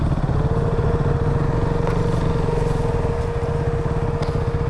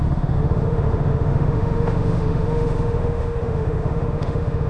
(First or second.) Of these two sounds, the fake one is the second